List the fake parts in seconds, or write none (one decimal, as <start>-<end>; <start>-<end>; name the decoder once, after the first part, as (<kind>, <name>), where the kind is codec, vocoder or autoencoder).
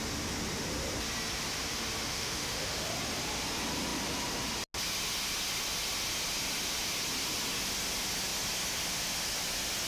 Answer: 2.1-2.9 (autoencoder, DAC-VAE)